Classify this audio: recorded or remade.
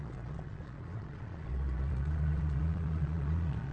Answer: remade